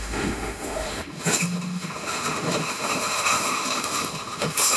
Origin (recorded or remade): remade